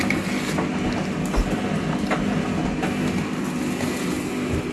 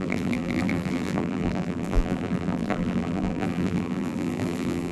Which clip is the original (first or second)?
first